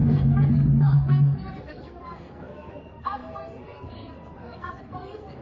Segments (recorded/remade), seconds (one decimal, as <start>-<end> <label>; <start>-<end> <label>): 0.0-5.4 remade